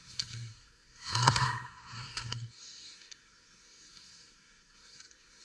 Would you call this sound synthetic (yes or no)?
yes